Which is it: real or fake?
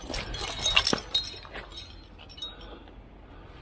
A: real